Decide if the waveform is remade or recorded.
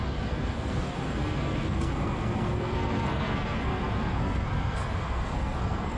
remade